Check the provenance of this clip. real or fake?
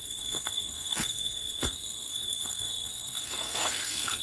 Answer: fake